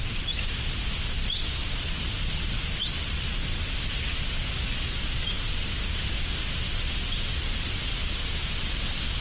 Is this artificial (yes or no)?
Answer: no